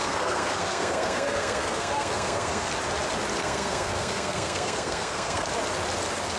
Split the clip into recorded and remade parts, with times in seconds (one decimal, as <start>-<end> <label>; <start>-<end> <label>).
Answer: 0.0-2.7 remade; 2.7-3.4 recorded; 3.4-5.5 remade; 5.5-6.4 recorded